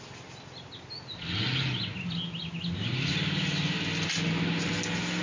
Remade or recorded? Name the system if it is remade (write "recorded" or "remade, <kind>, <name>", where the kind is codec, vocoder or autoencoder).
recorded